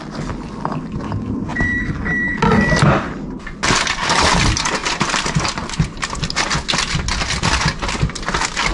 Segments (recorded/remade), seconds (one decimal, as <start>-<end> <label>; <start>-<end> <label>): 0.0-1.5 recorded; 1.5-2.4 remade; 2.4-8.7 recorded